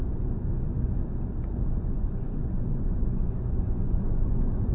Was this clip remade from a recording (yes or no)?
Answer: yes